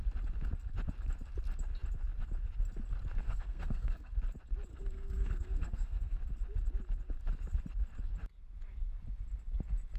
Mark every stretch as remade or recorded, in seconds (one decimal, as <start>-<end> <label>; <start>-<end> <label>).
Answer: 0.0-3.2 recorded; 3.2-4.1 remade; 4.1-4.7 recorded; 4.7-6.2 remade; 6.2-10.0 recorded